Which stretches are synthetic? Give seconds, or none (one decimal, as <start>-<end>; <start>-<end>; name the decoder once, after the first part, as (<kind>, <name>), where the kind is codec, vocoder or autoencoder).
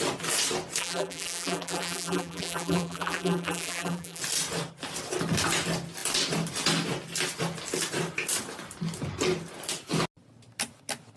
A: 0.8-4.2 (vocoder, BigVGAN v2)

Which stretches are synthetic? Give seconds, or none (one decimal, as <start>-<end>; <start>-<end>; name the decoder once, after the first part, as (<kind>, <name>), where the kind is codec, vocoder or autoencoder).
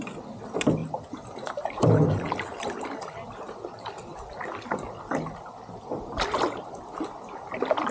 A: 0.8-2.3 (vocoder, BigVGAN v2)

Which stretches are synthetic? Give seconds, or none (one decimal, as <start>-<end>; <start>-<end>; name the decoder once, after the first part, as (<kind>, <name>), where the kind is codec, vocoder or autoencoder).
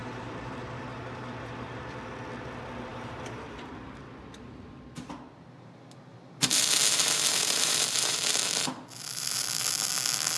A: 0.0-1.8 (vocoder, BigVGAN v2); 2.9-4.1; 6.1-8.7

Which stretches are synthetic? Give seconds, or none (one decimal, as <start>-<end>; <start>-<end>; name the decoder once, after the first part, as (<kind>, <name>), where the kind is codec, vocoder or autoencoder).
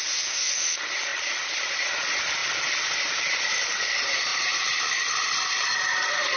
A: 1.1-1.7 (vocoder, BigVGAN v2); 2.4-3.8; 4.3-4.8